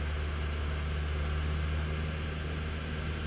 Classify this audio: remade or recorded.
recorded